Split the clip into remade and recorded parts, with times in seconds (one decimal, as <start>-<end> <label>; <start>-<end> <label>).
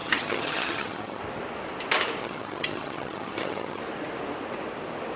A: 0.0-1.2 remade; 1.2-2.2 recorded; 2.2-3.8 remade; 3.8-5.2 recorded